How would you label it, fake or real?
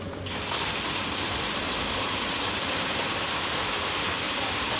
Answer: fake